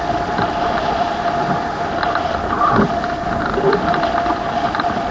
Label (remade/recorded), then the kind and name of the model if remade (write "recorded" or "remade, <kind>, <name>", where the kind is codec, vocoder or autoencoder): recorded